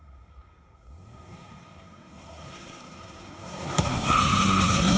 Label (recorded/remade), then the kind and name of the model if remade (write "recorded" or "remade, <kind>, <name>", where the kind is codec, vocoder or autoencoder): remade, codec, SNAC